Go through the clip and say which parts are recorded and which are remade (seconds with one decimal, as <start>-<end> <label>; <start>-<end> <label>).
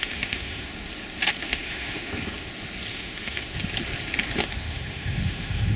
0.0-0.7 remade; 0.7-1.3 recorded; 1.3-2.1 remade; 2.1-2.9 recorded; 2.9-3.5 remade; 3.5-4.4 recorded; 4.4-5.8 remade